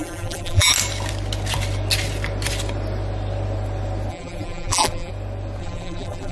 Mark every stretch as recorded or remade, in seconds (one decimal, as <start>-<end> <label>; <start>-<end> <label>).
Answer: 0.0-0.7 remade; 0.7-4.1 recorded; 4.1-5.1 remade; 5.1-5.6 recorded; 5.6-6.3 remade